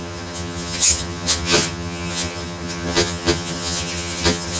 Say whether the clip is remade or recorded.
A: remade